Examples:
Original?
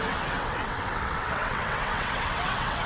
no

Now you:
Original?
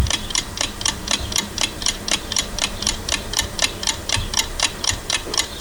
no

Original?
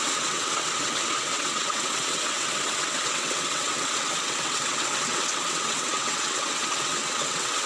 no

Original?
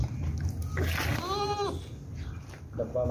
yes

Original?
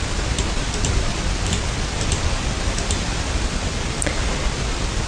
no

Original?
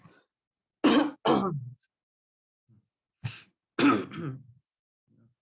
yes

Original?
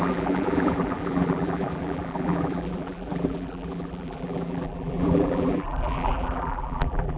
no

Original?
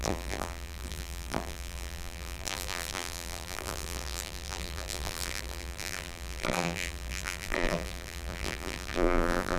no